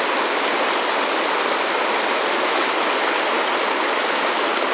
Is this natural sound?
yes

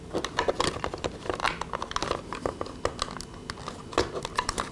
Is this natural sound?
yes